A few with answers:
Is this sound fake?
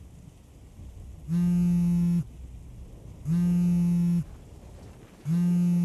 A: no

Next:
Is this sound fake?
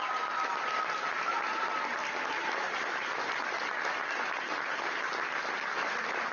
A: no